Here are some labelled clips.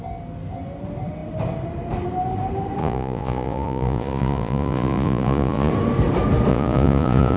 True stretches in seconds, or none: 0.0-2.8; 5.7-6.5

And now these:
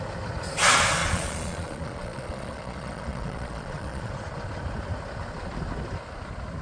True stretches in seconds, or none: 0.0-1.0; 4.1-6.6

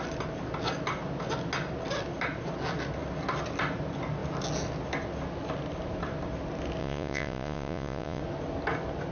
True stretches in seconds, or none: 0.0-6.8; 8.2-9.1

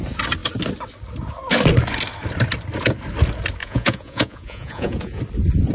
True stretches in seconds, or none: 0.0-3.6; 5.2-5.7

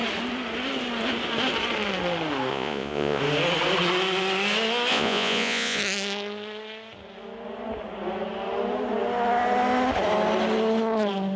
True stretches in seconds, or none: 0.0-2.5; 3.2-4.9; 5.8-11.4

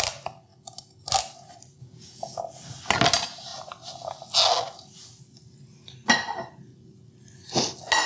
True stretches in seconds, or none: 0.0-1.8; 2.4-8.1